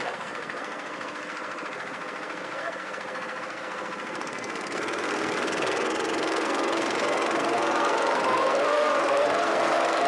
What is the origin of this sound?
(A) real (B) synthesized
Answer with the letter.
B